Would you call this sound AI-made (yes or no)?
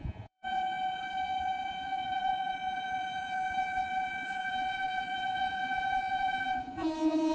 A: yes